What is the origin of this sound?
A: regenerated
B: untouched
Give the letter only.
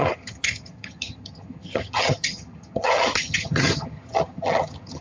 A